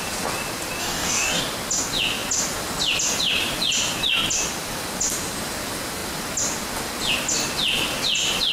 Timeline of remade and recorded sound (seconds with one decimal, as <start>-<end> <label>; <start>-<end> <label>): 0.0-0.8 recorded; 0.8-1.4 remade; 1.4-8.5 recorded